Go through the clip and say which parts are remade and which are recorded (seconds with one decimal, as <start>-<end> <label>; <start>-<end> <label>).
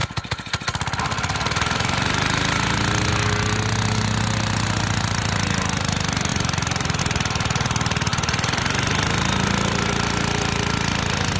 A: 0.0-6.3 recorded; 6.3-7.0 remade; 7.0-8.1 recorded; 8.1-8.6 remade; 8.6-11.4 recorded